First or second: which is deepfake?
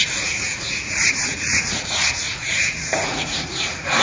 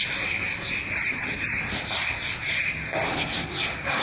first